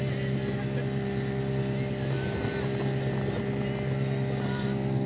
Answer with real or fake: real